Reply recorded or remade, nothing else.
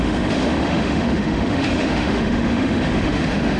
remade